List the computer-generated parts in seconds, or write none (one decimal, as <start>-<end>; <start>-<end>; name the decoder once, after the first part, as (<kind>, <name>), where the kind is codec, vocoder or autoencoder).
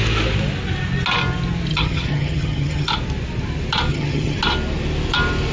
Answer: 1.7-2.9 (vocoder, HiFi-GAN); 3.9-4.4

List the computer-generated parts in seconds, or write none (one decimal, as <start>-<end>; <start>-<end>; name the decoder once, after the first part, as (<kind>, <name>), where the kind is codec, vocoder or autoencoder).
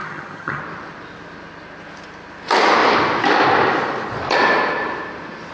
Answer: 0.0-0.6 (vocoder, HiFi-GAN)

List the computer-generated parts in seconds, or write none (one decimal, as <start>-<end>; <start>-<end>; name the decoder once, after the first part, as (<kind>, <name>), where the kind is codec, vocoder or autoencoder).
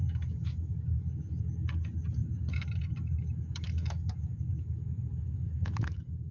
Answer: 0.0-1.4 (autoencoder, DAC-VAE); 2.2-6.3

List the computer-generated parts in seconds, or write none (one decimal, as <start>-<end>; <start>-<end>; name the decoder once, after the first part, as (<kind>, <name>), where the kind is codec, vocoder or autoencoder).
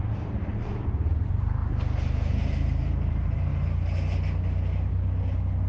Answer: 0.0-1.6 (vocoder, BigVGAN v2); 2.3-3.5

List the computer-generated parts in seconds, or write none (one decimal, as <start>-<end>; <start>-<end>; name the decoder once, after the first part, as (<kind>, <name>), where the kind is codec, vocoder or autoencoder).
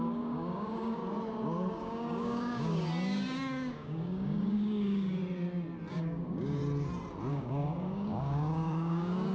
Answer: 0.0-1.0 (codec, DAC); 1.7-5.2; 5.9-6.6; 7.3-9.3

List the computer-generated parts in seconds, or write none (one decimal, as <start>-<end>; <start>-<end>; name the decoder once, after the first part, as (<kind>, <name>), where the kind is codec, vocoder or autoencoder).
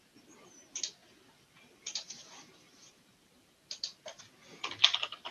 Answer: 1.0-4.2 (vocoder, BigVGAN v2)